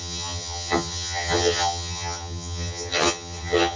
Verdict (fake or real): fake